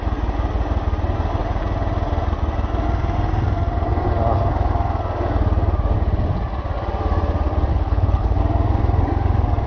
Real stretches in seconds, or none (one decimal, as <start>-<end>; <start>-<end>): 0.0-7.7; 8.4-9.7